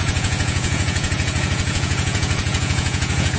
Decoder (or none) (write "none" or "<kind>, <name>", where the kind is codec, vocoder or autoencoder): vocoder, Vocos